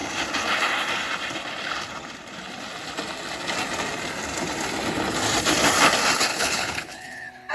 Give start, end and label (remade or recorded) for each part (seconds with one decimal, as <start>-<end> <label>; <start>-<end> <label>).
0.0-6.3 recorded; 6.3-7.5 remade